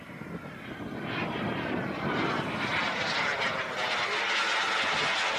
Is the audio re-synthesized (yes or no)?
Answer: no